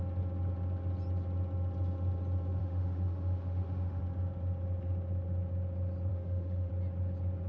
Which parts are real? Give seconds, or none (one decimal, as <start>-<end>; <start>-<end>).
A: 0.0-2.6; 4.0-6.1; 6.7-7.5